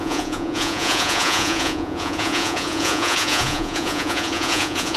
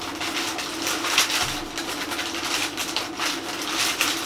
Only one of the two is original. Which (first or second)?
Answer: second